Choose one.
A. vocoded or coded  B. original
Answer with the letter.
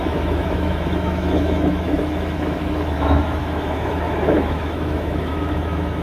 A